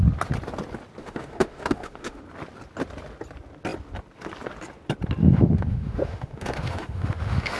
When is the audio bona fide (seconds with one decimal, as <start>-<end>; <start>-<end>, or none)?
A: 0.0-1.0; 2.2-5.2